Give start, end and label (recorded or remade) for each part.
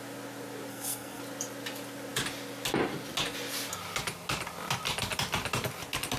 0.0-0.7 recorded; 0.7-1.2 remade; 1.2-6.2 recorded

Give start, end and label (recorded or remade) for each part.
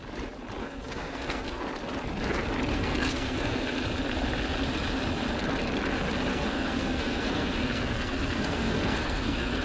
0.0-0.6 recorded; 0.6-1.6 remade; 1.6-2.7 recorded; 2.7-3.8 remade; 3.8-6.3 recorded; 6.3-9.6 remade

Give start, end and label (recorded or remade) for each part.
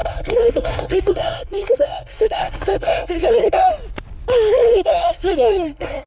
0.0-3.7 remade; 3.7-4.7 recorded; 4.7-6.1 remade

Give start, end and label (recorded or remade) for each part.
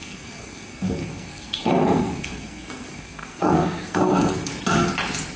0.0-4.5 remade; 4.5-5.4 recorded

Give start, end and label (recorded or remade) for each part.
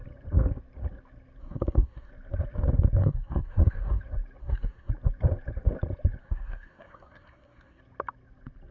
0.0-1.4 recorded; 1.4-2.1 remade; 2.1-3.0 recorded; 3.0-4.0 remade; 4.0-4.4 recorded; 4.4-4.9 remade; 4.9-6.2 recorded; 6.2-7.8 remade; 7.8-8.7 recorded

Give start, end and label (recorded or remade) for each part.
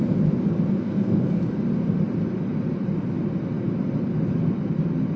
0.0-0.8 recorded; 0.8-1.4 remade; 1.4-5.2 recorded